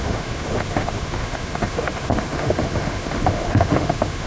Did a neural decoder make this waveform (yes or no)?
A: yes